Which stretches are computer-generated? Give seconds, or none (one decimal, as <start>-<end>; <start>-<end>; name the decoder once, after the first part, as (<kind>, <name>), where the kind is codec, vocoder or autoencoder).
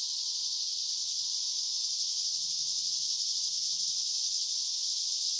0.7-1.2 (vocoder, WaveNeXt); 1.9-5.4